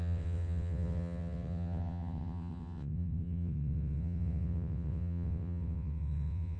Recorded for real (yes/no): no